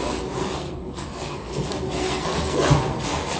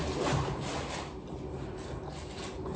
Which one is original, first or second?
second